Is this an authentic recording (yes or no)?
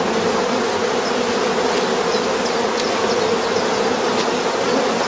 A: yes